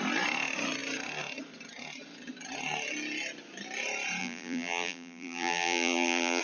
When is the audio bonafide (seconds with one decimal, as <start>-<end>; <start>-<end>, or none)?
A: 0.0-4.2